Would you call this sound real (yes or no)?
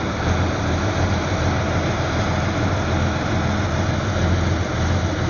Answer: yes